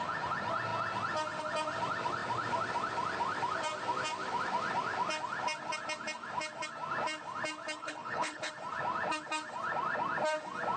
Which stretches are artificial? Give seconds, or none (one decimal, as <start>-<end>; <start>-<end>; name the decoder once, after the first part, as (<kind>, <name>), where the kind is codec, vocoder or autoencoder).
7.8-8.5 (codec, HILCodec)